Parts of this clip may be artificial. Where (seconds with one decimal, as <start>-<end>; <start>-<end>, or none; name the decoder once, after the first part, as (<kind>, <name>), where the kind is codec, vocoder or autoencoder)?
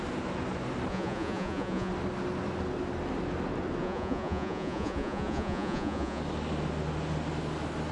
0.9-1.9 (vocoder, Vocos); 3.8-6.2